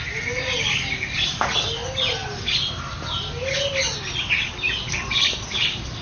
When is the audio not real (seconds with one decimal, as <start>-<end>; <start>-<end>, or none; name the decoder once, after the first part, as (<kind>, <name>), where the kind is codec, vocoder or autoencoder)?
none